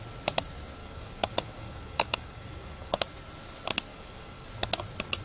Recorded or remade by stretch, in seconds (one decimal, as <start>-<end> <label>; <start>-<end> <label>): 0.0-0.8 recorded; 0.8-3.0 remade; 3.0-3.9 recorded; 3.9-4.5 remade; 4.5-5.2 recorded